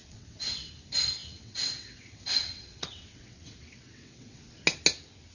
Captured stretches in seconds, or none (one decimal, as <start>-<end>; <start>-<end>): 0.7-1.2; 4.4-5.3